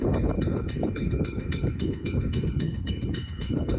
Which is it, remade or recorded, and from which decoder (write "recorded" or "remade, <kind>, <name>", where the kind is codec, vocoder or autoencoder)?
remade, codec, HILCodec